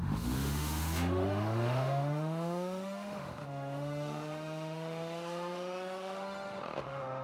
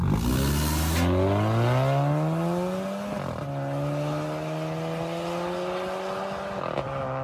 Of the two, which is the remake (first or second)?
first